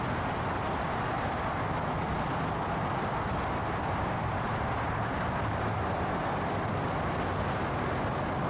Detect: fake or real real